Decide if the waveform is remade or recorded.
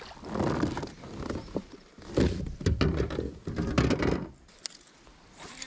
recorded